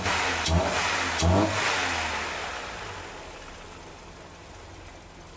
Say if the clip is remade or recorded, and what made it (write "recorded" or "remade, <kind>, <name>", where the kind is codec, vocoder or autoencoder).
recorded